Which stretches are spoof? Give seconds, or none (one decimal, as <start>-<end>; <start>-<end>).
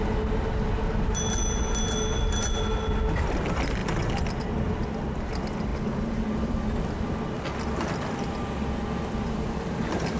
none